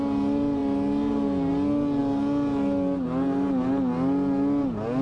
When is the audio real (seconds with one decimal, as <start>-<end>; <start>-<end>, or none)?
0.0-5.0